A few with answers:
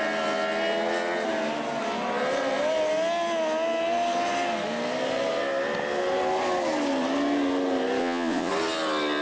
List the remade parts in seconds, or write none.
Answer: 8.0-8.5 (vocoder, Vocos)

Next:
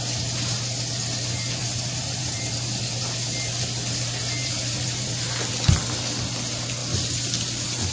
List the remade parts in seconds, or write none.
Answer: 1.6-2.8 (vocoder, BigVGAN v2); 4.4-5.1